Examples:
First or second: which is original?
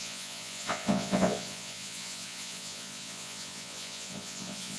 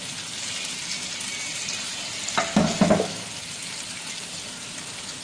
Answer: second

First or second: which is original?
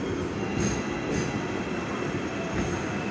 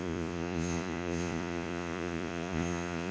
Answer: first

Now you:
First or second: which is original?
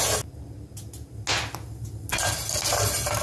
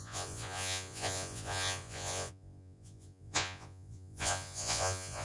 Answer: first